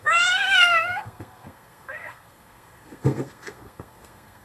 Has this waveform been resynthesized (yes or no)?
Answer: yes